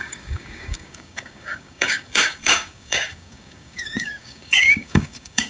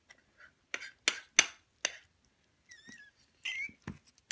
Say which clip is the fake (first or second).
first